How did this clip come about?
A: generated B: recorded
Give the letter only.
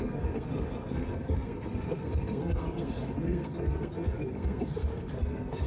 A